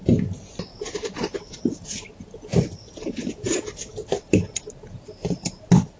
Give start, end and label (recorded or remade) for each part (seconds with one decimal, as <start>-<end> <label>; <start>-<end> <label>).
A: 0.0-6.0 recorded